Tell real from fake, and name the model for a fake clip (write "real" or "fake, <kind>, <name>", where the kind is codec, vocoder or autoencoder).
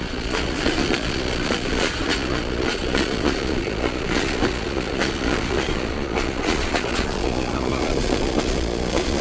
fake, vocoder, Vocos